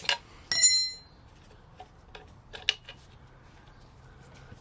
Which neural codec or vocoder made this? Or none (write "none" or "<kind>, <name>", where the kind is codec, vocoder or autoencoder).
none